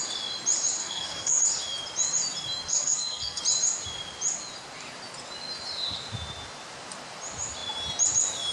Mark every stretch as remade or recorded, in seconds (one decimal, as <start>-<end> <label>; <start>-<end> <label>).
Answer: 0.0-0.8 recorded; 0.8-1.4 remade; 1.4-2.7 recorded; 2.7-3.4 remade; 3.4-8.5 recorded